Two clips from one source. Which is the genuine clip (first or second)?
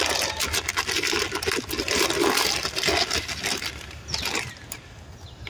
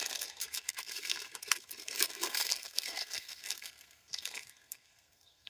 first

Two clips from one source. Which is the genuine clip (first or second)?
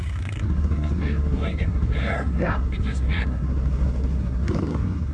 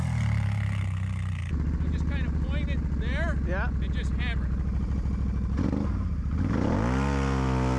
second